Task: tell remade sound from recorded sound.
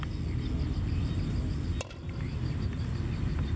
recorded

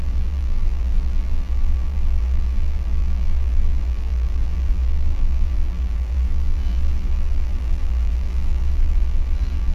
remade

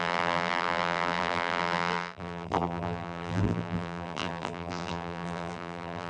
remade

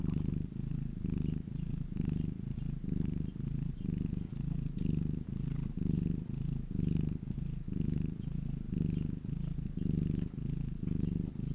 recorded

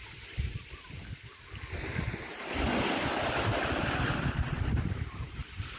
remade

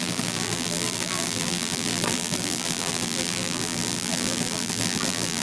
remade